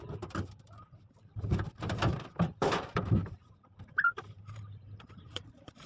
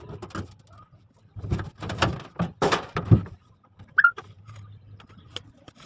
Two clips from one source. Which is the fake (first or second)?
first